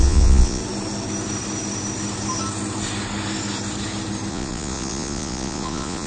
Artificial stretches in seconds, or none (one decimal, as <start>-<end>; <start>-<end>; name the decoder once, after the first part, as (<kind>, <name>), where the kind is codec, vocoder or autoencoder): 0.0-0.6 (vocoder, Vocos); 4.3-6.1